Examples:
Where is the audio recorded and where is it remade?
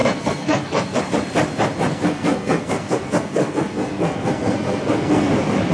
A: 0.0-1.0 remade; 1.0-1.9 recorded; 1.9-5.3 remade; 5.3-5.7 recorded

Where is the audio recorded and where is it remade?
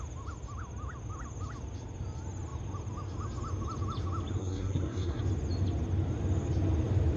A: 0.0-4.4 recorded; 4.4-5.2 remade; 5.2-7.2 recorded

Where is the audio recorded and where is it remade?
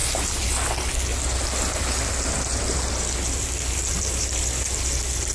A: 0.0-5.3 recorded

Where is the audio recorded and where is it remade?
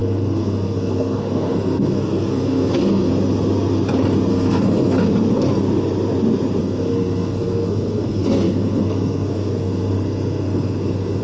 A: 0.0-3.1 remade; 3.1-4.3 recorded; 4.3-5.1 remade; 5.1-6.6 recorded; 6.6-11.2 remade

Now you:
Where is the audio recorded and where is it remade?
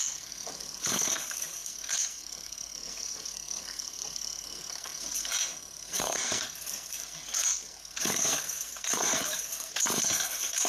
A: 0.0-10.7 remade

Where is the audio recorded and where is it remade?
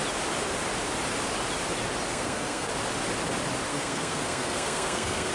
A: 0.0-2.1 recorded; 2.1-2.7 remade; 2.7-3.7 recorded; 3.7-5.3 remade